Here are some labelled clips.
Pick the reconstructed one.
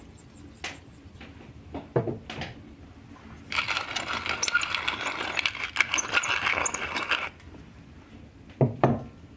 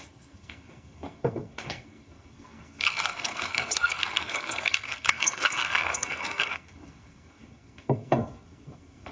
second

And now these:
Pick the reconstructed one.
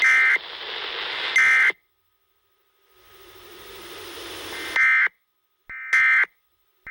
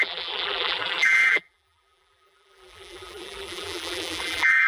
second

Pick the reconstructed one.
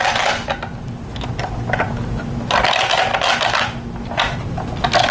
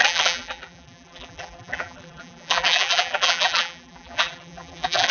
second